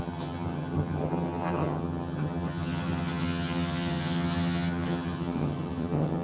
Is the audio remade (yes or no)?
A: yes